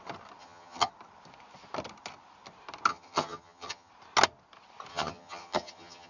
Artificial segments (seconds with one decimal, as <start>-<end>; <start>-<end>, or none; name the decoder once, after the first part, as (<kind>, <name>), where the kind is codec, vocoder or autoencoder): 0.4-0.9 (vocoder, HiFi-GAN); 2.9-3.9; 4.9-6.1